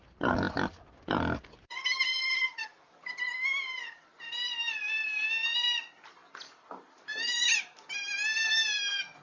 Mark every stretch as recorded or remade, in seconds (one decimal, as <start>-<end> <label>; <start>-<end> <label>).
0.0-9.2 recorded